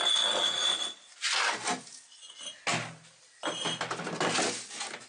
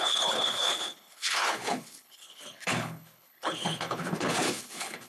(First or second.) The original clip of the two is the first